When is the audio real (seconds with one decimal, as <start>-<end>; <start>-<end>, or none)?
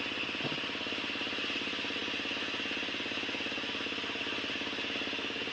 0.0-5.5